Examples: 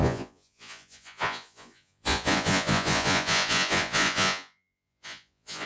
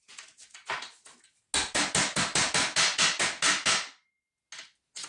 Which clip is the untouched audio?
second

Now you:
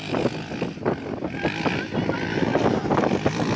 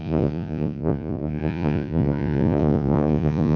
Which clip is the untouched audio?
first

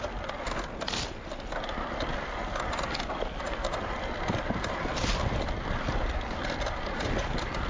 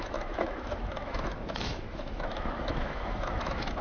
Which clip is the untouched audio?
first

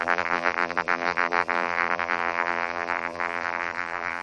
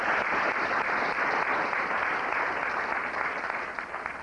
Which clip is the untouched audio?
second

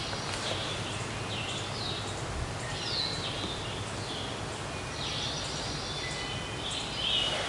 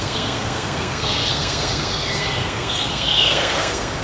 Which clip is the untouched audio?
first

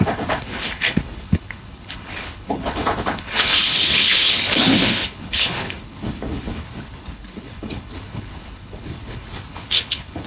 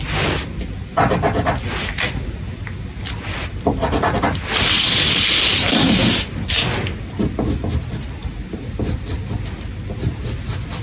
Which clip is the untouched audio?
second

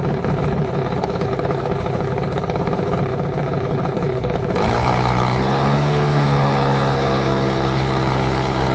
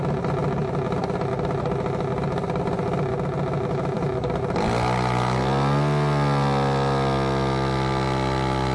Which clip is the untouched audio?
second